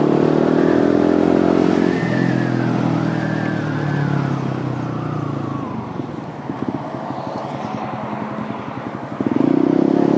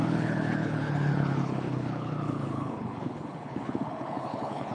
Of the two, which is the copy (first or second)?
second